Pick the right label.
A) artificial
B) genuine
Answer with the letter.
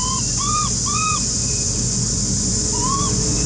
A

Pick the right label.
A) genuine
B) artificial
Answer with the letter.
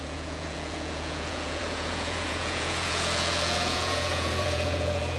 B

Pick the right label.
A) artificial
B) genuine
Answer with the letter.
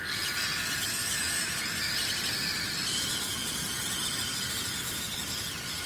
B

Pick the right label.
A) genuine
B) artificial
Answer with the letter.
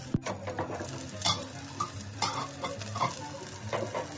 A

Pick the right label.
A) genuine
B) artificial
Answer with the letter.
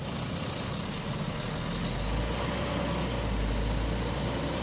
A